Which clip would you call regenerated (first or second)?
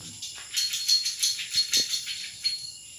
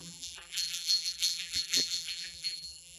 second